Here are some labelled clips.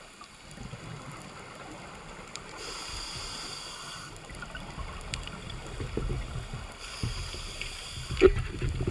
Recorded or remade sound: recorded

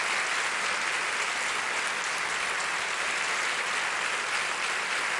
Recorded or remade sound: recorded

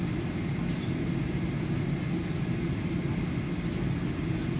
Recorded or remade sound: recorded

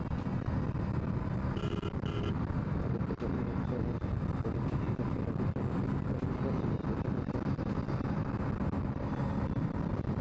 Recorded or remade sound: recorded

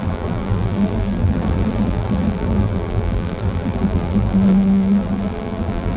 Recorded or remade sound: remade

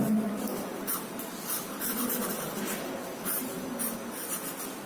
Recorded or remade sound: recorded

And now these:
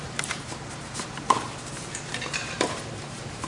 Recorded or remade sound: remade